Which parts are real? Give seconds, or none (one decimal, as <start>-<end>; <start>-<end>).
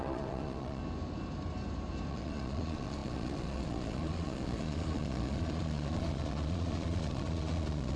0.8-2.1